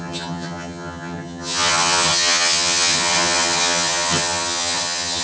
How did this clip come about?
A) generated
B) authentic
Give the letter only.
A